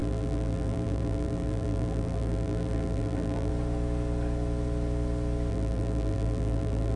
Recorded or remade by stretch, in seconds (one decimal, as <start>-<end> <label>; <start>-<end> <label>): 0.0-3.5 remade; 3.5-5.5 recorded; 5.5-7.0 remade